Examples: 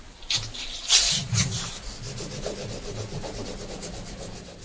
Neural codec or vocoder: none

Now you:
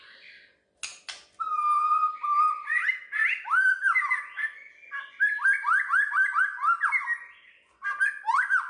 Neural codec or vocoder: none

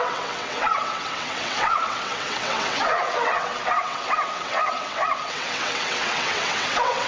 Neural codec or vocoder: vocoder, WaveNeXt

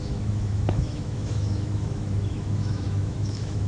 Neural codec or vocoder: autoencoder, DAC-VAE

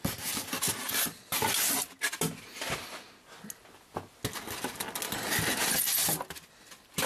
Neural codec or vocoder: none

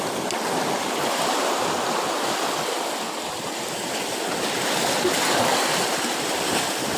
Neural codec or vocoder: none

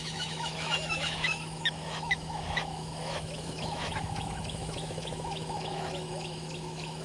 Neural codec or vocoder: autoencoder, DAC-VAE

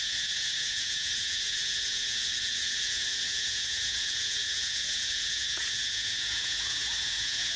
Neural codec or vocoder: vocoder, Vocos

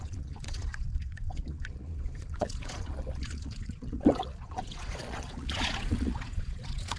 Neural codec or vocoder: vocoder, Vocos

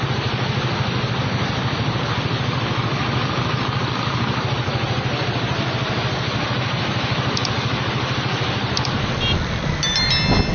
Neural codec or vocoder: none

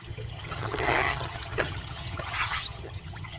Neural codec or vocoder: vocoder, HiFi-GAN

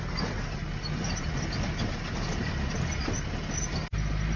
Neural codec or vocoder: none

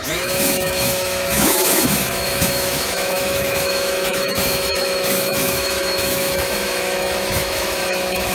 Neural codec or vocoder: autoencoder, DAC-VAE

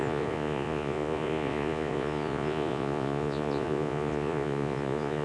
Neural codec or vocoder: vocoder, Vocos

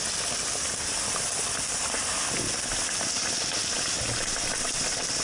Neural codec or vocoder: none